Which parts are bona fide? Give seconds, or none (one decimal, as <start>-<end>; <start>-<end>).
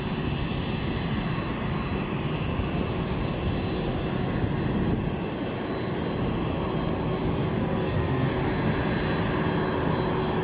0.0-7.6; 8.3-10.4